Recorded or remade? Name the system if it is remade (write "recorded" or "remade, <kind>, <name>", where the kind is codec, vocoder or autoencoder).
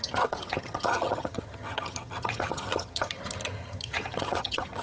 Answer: remade, vocoder, HiFi-GAN